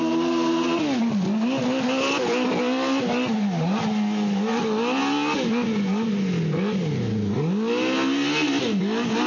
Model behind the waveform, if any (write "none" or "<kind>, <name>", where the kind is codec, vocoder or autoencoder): none